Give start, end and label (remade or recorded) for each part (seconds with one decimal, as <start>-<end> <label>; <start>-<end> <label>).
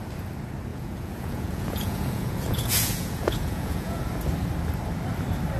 0.0-0.7 recorded; 0.7-4.1 remade; 4.1-5.6 recorded